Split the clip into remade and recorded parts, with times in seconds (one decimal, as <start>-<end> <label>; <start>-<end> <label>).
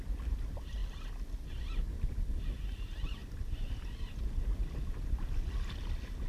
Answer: 0.0-6.3 recorded